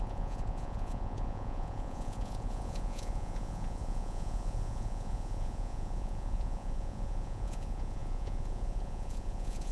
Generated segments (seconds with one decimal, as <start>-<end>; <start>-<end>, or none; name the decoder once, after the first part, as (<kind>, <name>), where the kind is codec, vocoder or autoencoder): 0.0-9.7 (vocoder, Vocos)